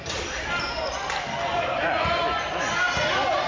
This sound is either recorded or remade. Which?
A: recorded